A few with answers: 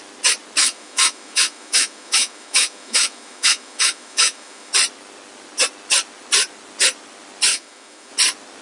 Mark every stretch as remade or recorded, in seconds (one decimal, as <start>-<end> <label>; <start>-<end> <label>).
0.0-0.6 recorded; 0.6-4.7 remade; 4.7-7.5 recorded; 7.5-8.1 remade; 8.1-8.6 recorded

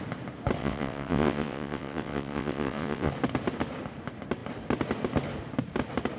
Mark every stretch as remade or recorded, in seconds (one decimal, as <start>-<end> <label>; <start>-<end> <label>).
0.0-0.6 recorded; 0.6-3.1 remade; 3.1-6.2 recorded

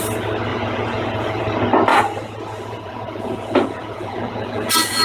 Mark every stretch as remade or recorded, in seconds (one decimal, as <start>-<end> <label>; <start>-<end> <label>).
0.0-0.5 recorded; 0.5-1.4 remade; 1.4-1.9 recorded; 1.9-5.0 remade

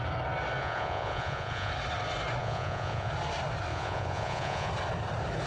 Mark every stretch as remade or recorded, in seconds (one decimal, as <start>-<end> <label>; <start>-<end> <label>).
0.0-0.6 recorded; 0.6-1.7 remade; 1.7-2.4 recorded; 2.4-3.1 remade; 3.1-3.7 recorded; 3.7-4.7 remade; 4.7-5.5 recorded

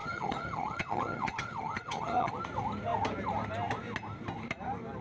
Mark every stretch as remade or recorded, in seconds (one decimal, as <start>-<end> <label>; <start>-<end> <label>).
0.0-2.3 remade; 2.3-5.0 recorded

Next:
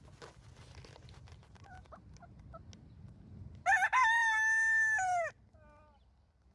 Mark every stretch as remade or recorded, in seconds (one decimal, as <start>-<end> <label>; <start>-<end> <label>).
0.0-6.5 recorded

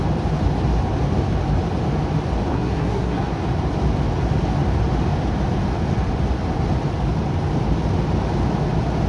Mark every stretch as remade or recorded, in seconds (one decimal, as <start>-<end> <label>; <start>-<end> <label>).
0.0-2.5 recorded; 2.5-3.2 remade; 3.2-9.1 recorded